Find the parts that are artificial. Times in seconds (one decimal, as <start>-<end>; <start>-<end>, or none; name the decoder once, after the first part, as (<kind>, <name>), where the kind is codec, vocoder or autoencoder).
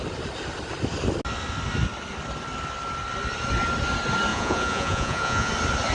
4.3-5.5 (vocoder, Vocos)